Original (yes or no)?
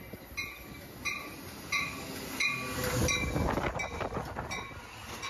yes